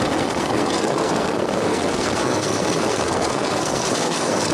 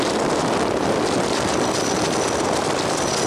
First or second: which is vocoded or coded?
first